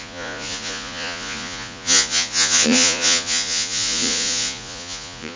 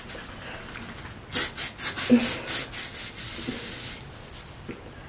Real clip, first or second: second